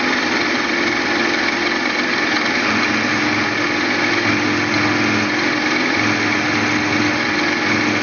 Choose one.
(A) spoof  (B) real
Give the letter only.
B